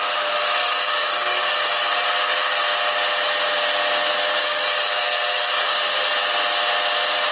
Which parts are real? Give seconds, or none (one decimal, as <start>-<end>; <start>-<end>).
0.0-0.6; 1.8-4.4; 5.6-7.3